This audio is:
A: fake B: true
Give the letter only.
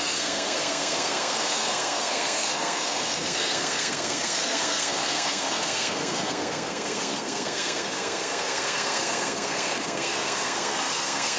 A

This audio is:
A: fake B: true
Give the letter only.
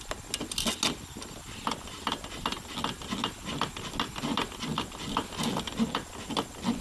B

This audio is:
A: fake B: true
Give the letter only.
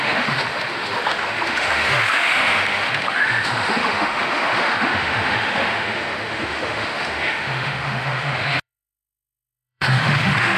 A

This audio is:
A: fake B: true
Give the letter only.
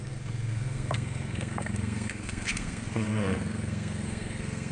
A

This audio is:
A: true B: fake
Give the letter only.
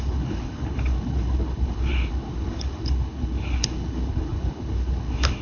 B